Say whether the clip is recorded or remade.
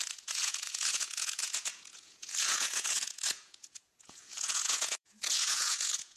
remade